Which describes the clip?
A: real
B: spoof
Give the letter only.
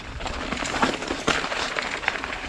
B